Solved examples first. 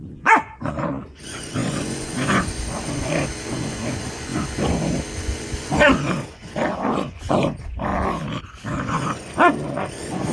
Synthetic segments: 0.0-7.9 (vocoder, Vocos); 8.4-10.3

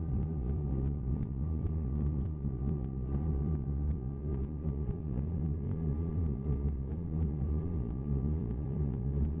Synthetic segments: 0.0-9.4 (vocoder, Vocos)

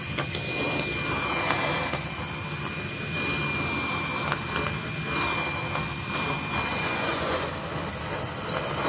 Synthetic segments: 6.7-7.5 (vocoder, Vocos)

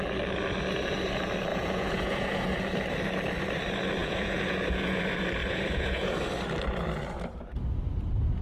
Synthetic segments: 1.5-2.6 (vocoder, Vocos); 4.0-5.0; 5.4-6.3

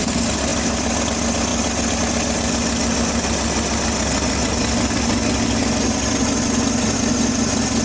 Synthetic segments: none

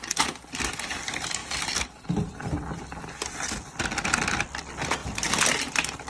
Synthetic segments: none